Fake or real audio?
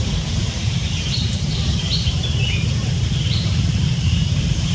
fake